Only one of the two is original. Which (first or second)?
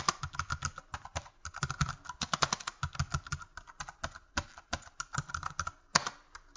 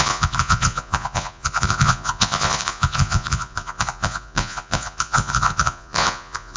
first